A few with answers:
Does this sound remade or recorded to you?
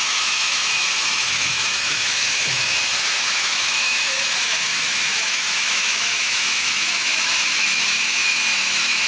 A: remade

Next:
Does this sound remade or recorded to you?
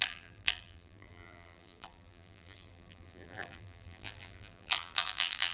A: remade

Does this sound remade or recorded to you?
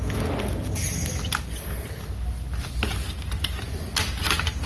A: recorded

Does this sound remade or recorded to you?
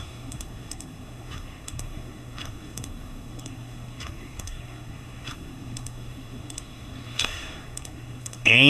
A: remade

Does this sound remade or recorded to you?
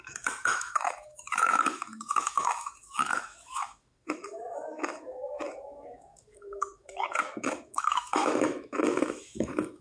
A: remade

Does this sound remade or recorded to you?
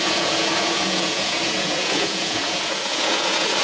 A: remade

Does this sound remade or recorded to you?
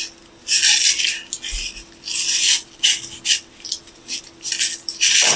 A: recorded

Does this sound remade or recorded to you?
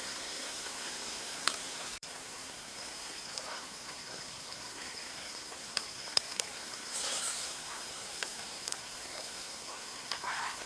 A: remade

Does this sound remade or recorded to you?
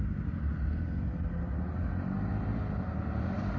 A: recorded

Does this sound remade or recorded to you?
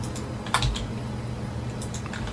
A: recorded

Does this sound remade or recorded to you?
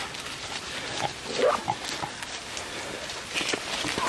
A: recorded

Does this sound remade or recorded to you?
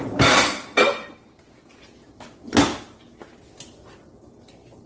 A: recorded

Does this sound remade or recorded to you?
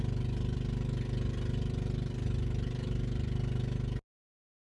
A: recorded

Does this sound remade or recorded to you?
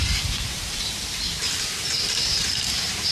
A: remade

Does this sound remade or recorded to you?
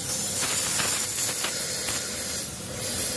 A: recorded